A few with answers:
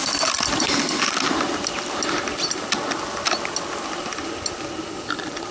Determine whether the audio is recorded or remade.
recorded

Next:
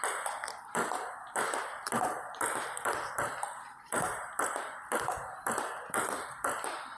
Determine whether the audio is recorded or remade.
recorded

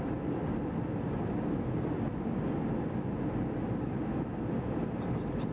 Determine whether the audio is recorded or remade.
recorded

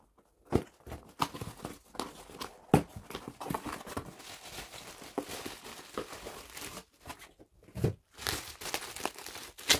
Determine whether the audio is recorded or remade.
recorded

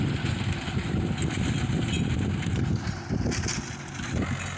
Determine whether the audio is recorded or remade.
recorded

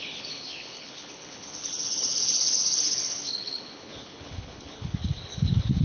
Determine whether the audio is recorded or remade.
remade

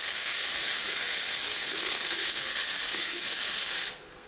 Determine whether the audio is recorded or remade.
remade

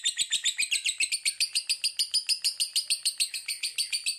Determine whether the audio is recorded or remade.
recorded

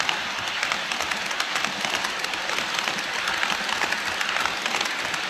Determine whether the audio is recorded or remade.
recorded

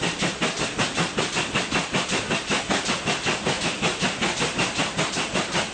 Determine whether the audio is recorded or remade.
recorded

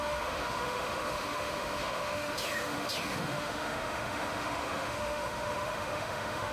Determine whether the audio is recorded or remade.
remade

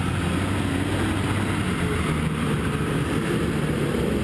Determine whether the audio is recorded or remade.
recorded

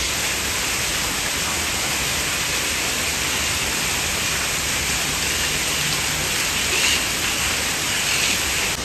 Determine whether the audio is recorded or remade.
recorded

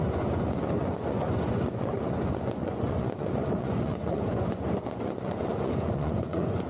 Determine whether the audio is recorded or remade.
remade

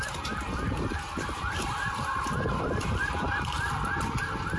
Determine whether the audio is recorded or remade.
remade